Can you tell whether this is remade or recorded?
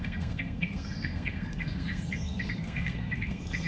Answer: remade